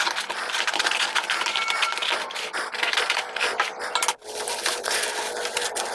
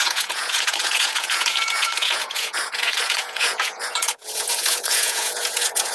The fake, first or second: second